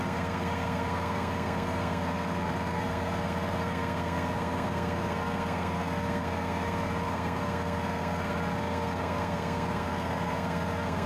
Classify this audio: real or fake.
fake